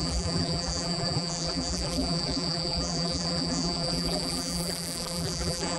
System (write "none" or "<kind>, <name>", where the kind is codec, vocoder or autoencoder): vocoder, BigVGAN v2